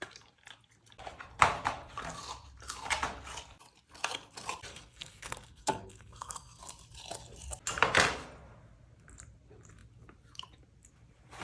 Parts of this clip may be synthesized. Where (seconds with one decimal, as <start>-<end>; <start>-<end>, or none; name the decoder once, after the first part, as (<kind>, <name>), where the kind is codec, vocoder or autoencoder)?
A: 4.7-6.6 (codec, SNAC)